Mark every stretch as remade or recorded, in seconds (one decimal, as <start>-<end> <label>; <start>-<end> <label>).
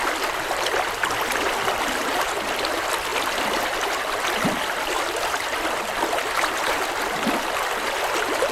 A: 0.0-8.5 recorded